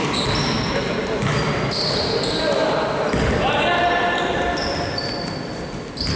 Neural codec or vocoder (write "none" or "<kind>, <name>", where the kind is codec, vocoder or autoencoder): none